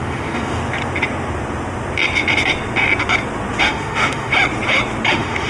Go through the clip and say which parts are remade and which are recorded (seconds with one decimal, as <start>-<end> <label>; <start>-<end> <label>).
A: 0.0-0.6 remade; 0.6-3.6 recorded; 3.6-4.3 remade; 4.3-5.1 recorded; 5.1-5.5 remade